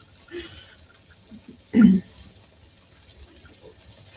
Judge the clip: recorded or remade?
recorded